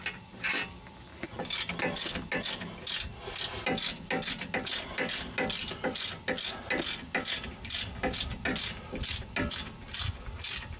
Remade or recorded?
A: recorded